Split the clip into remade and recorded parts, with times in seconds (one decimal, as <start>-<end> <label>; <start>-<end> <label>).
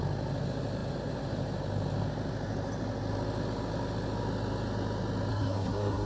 0.0-5.3 recorded; 5.3-6.1 remade